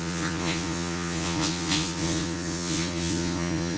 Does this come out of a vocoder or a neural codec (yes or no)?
yes